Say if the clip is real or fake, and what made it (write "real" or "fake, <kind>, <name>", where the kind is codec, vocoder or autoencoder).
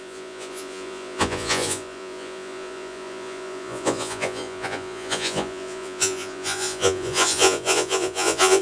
fake, vocoder, Vocos